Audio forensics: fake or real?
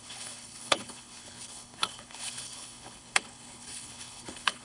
fake